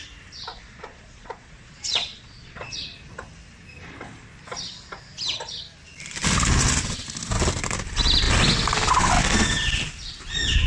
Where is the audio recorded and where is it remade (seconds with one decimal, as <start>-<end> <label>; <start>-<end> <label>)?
0.0-0.5 recorded; 0.5-2.8 remade; 2.8-10.7 recorded